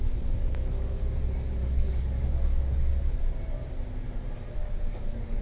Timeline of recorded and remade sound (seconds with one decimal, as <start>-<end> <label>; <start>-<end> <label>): 0.0-0.4 recorded; 0.4-1.0 remade; 1.0-1.6 recorded; 1.6-3.3 remade; 3.3-4.6 recorded; 4.6-5.4 remade